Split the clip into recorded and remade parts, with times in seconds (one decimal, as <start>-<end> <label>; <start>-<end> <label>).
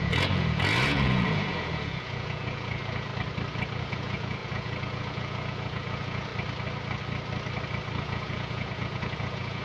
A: 0.0-3.1 remade; 3.1-3.8 recorded; 3.8-6.3 remade; 6.3-8.0 recorded; 8.0-9.6 remade